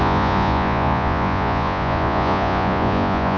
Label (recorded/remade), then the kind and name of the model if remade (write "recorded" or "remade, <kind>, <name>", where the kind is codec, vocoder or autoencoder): remade, vocoder, Vocos